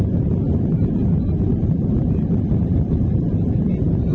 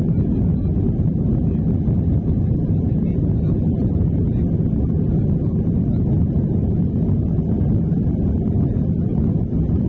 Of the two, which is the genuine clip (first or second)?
second